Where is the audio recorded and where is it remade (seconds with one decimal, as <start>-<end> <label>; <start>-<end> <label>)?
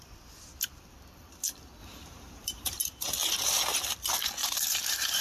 0.0-1.8 recorded; 1.8-2.8 remade; 2.8-4.4 recorded; 4.4-5.2 remade